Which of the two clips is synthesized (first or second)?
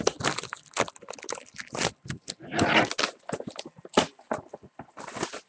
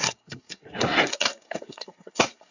second